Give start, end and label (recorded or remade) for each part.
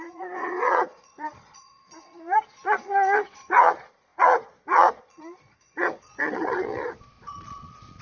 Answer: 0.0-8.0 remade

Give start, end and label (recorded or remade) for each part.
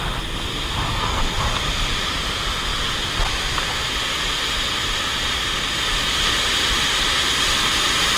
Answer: 0.0-0.9 recorded; 0.9-1.4 remade; 1.4-8.2 recorded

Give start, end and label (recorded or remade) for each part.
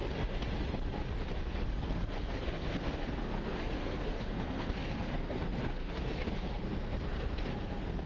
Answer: 0.0-1.4 recorded; 1.4-8.1 remade